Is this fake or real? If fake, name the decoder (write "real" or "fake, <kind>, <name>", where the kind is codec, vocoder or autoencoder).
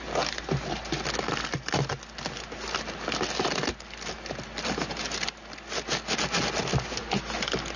real